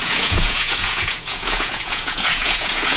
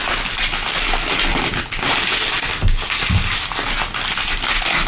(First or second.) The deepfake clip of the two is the first